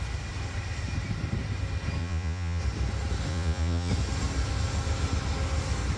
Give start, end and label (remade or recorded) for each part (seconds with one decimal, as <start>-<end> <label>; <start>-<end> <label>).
0.0-2.0 recorded; 2.0-2.6 remade; 2.6-3.3 recorded; 3.3-3.9 remade; 3.9-6.0 recorded